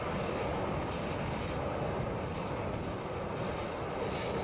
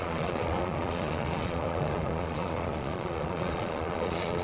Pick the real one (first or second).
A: first